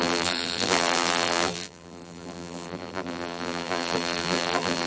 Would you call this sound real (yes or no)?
no